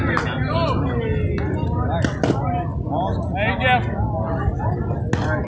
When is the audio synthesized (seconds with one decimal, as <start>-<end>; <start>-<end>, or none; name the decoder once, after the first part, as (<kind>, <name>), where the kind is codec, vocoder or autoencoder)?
none